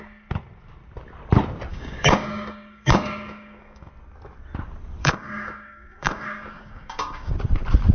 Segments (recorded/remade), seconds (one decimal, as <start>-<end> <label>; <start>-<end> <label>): 0.0-1.7 recorded; 1.7-3.9 remade; 3.9-5.0 recorded; 5.0-7.3 remade; 7.3-7.9 recorded

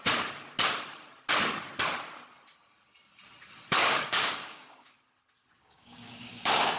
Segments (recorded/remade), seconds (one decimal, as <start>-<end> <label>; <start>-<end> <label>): 0.0-3.8 recorded; 3.8-4.9 remade; 4.9-5.6 recorded; 5.6-6.8 remade

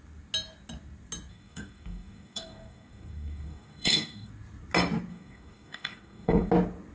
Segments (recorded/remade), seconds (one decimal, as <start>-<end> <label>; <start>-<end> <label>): 0.0-1.3 recorded; 1.3-4.3 remade; 4.3-5.1 recorded; 5.1-6.5 remade; 6.5-6.9 recorded

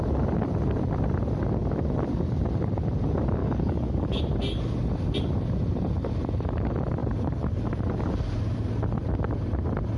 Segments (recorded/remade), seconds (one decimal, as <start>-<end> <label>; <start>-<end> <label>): 0.0-3.4 recorded; 3.4-4.2 remade; 4.2-10.0 recorded

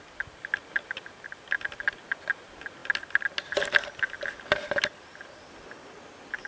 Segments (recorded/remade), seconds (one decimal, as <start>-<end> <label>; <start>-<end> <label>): 0.0-6.5 recorded

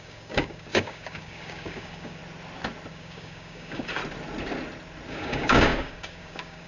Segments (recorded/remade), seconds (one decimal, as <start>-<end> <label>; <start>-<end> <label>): 0.0-2.2 remade; 2.2-2.9 recorded; 2.9-4.0 remade; 4.0-5.1 recorded; 5.1-6.7 remade

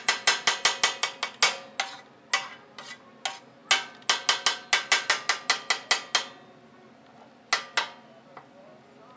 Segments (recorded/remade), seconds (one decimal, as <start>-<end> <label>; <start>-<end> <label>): 0.0-9.2 recorded